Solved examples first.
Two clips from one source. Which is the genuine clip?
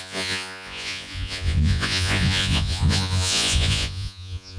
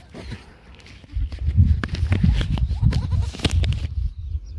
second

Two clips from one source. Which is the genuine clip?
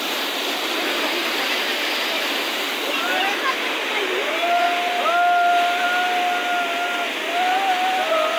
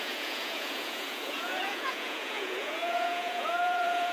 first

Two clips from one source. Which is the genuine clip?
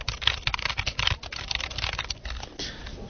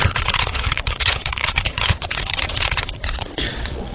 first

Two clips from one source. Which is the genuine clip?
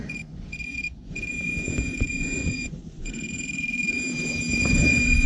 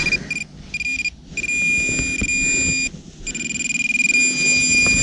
second